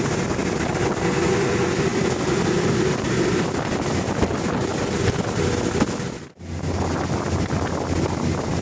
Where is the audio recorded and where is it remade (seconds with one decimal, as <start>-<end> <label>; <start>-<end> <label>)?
0.0-1.9 recorded; 1.9-3.5 remade; 3.5-8.6 recorded

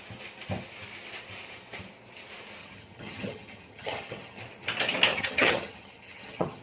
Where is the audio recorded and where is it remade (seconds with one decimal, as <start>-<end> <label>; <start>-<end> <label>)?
0.0-2.6 recorded; 2.6-4.4 remade; 4.4-5.1 recorded; 5.1-6.6 remade

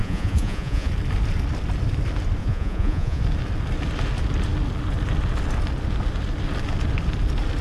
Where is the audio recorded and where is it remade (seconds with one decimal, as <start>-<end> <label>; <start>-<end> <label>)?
0.0-0.9 remade; 0.9-2.4 recorded; 2.4-3.2 remade; 3.2-7.6 recorded

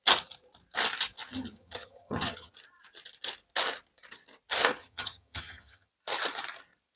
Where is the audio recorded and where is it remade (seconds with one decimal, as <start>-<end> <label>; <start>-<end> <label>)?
0.0-1.3 recorded; 1.3-2.5 remade; 2.5-4.8 recorded; 4.8-5.9 remade; 5.9-7.0 recorded

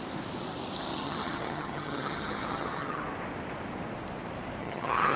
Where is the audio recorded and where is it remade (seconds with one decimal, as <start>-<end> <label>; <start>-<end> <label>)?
0.0-0.9 recorded; 0.9-3.0 remade; 3.0-4.6 recorded; 4.6-5.2 remade

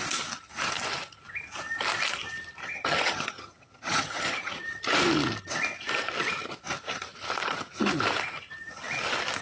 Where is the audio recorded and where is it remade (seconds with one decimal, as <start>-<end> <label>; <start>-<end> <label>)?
0.0-2.6 recorded; 2.6-4.6 remade; 4.6-9.4 recorded

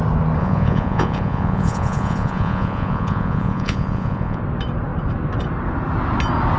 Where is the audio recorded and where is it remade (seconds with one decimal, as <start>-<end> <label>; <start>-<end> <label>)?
0.0-0.4 recorded; 0.4-4.4 remade; 4.4-6.6 recorded